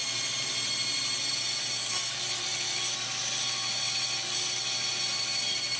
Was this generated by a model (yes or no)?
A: no